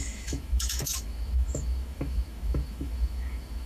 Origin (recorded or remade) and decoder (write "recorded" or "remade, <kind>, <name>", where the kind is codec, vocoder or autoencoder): remade, autoencoder, DAC-VAE